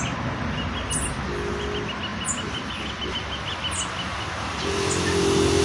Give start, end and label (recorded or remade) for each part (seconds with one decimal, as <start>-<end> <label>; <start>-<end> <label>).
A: 0.0-5.6 recorded